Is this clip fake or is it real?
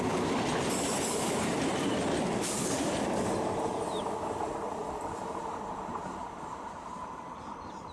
fake